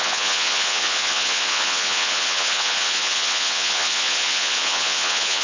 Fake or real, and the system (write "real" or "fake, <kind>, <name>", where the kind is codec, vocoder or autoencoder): fake, vocoder, Vocos